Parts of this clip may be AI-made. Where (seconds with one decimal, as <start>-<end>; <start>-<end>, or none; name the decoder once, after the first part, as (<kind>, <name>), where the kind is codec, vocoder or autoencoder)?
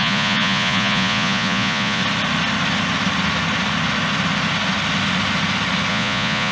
0.0-2.0 (vocoder, Vocos); 5.9-6.5